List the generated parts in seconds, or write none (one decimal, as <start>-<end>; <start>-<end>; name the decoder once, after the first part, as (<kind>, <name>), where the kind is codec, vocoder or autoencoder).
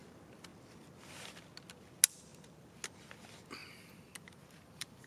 3.6-5.1 (vocoder, BigVGAN v2)